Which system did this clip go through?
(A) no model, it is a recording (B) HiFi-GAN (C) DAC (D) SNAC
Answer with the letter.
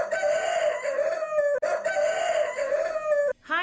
A